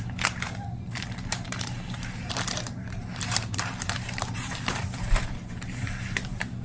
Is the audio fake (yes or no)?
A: yes